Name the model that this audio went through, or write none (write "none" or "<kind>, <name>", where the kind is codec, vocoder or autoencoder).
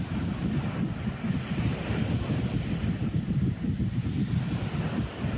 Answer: none